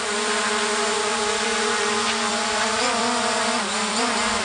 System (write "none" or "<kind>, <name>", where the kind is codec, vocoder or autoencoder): vocoder, BigVGAN v2